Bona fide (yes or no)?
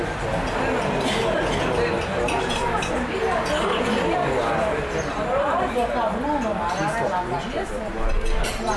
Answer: yes